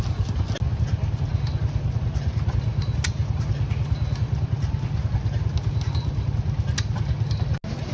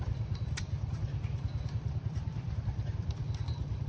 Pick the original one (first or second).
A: first